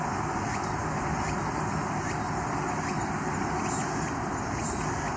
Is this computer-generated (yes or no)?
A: no